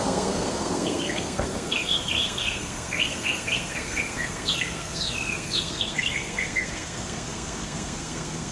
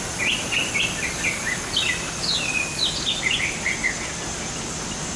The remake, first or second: first